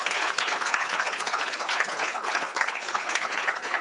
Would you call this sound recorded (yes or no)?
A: no